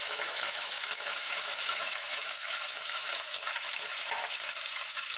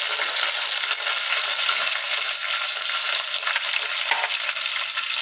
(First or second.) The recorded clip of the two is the second